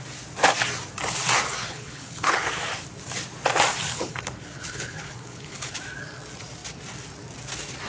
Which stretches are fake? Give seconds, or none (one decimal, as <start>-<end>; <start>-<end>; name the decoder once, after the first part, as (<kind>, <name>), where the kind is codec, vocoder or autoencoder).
1.5-2.5 (codec, HILCodec); 3.9-5.8